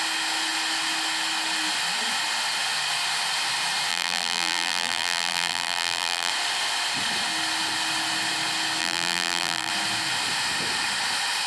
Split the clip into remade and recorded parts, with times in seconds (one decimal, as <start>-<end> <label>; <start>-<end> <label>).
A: 0.0-3.9 recorded; 3.9-6.3 remade; 6.3-8.8 recorded; 8.8-9.7 remade; 9.7-11.5 recorded